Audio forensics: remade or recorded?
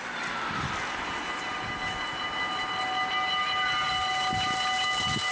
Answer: recorded